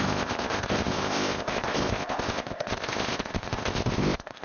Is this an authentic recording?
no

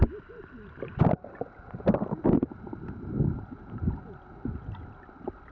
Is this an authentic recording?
yes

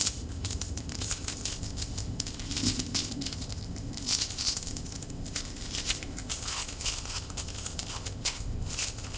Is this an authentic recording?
no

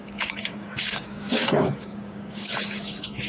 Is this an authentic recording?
no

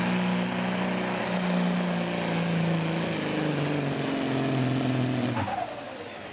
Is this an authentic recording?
yes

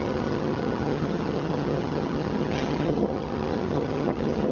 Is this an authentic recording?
no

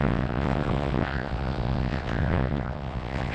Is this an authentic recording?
no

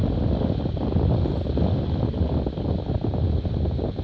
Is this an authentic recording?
yes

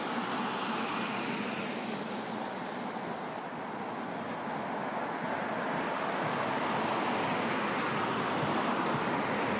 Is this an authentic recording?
yes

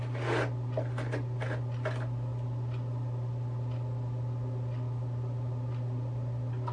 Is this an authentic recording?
yes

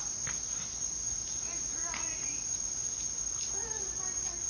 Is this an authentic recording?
yes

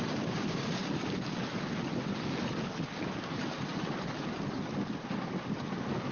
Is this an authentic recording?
yes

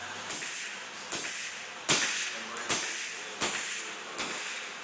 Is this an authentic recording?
yes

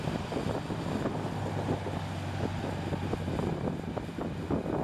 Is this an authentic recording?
yes